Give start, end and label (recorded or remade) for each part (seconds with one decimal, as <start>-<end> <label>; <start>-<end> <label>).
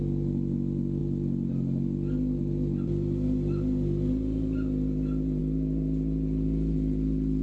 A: 0.0-7.4 recorded